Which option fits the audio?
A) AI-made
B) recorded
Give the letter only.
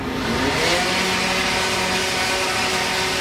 B